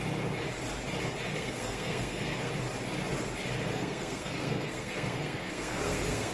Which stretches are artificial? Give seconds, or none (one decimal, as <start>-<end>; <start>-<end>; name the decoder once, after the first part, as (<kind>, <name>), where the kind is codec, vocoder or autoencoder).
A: 1.3-2.5 (codec, SNAC); 3.7-6.3